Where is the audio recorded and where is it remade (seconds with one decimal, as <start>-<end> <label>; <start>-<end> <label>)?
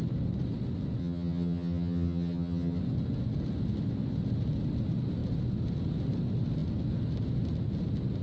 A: 0.0-1.0 recorded; 1.0-2.8 remade; 2.8-8.2 recorded